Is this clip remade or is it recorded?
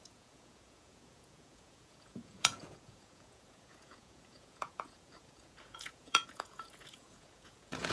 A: remade